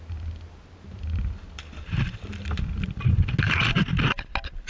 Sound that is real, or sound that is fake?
real